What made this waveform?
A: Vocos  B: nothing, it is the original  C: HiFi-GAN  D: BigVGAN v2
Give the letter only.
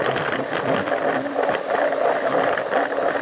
B